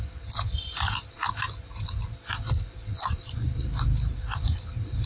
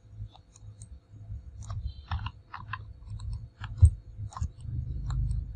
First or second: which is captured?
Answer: second